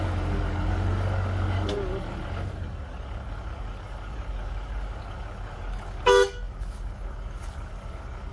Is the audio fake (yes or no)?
yes